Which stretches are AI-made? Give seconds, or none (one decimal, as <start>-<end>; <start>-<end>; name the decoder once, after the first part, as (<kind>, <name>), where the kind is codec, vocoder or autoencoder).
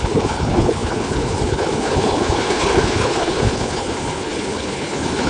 0.0-5.3 (codec, HILCodec)